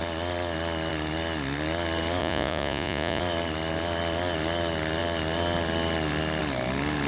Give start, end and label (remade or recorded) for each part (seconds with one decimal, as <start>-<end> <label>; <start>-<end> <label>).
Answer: 0.0-2.2 recorded; 2.2-3.2 remade; 3.2-7.1 recorded

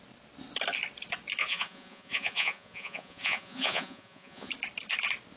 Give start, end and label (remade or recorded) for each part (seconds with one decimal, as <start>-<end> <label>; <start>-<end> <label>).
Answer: 0.0-1.4 recorded; 1.4-4.5 remade; 4.5-5.4 recorded

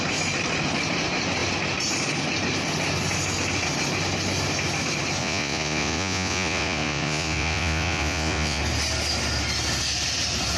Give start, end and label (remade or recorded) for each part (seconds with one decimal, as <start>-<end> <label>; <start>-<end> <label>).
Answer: 0.0-5.2 recorded; 5.2-8.6 remade; 8.6-10.6 recorded

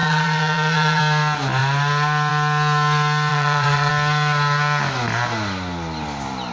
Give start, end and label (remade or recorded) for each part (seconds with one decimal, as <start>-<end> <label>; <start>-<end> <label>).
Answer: 0.0-1.0 remade; 1.0-3.3 recorded; 3.3-3.9 remade; 3.9-6.5 recorded

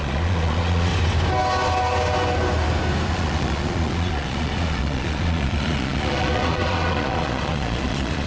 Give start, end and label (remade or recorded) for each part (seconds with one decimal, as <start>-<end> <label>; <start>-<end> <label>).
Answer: 0.0-0.9 remade; 0.9-3.1 recorded; 3.1-8.3 remade

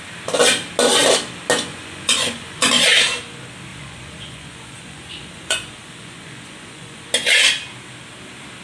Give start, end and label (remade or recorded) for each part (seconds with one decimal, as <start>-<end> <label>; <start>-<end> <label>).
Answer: 0.0-1.7 recorded; 1.7-2.7 remade; 2.7-3.7 recorded; 3.7-7.0 remade; 7.0-8.6 recorded